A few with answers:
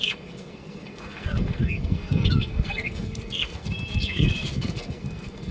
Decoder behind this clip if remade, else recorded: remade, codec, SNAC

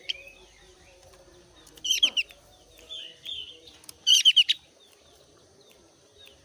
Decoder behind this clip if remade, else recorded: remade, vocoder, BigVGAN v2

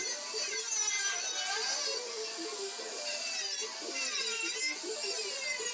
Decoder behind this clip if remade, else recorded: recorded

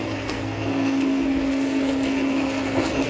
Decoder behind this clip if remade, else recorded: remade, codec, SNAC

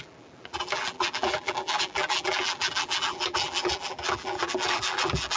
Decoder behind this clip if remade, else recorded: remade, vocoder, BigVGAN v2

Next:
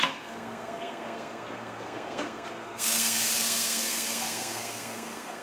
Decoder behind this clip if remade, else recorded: remade, codec, SNAC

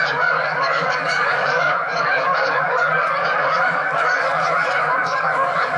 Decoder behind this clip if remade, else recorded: remade, codec, DAC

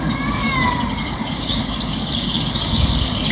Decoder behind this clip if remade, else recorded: remade, codec, DAC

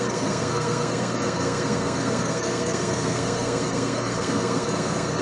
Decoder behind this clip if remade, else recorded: remade, codec, SNAC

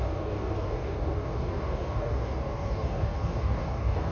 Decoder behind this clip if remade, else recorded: remade, codec, DAC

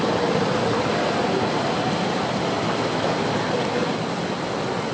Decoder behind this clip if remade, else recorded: recorded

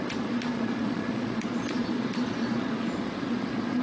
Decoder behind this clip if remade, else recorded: remade, vocoder, Vocos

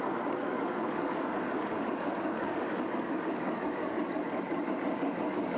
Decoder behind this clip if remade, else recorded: remade, codec, DAC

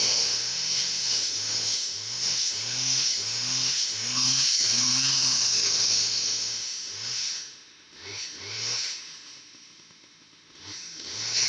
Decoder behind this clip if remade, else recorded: remade, autoencoder, DAC-VAE